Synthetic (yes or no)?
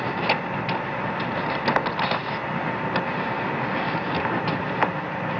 no